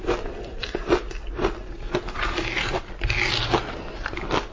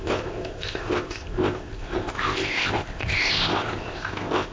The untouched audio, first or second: first